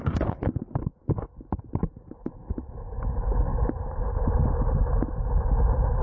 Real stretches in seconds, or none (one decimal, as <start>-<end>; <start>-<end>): 0.0-6.0

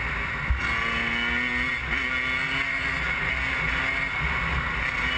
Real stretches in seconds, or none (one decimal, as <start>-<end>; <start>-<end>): 0.0-5.2

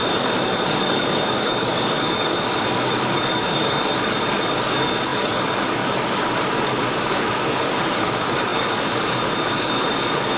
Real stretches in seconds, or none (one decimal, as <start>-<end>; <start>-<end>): none